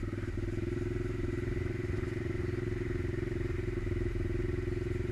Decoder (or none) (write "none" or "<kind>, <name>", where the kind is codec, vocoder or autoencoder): vocoder, BigVGAN v2